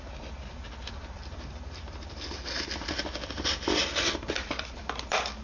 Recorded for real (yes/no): no